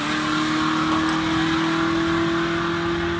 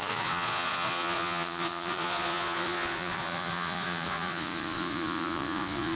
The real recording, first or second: first